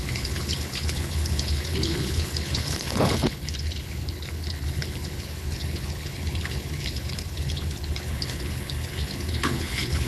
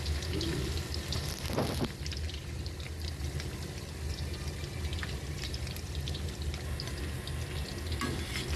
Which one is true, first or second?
second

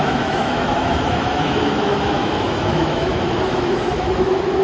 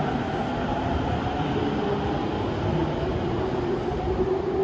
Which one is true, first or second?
second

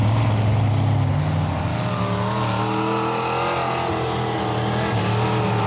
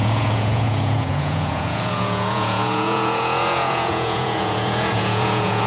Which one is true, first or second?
first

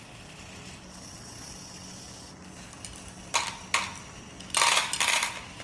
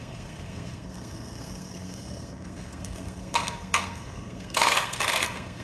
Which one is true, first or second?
first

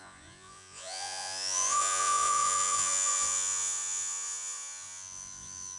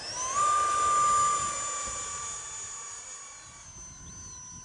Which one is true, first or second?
second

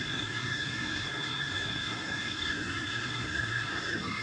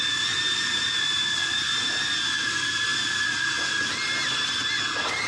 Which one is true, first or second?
second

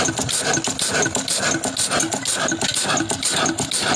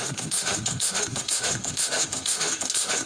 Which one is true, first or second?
first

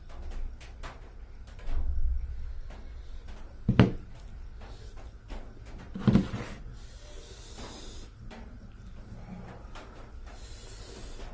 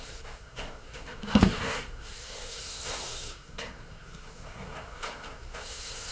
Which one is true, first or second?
first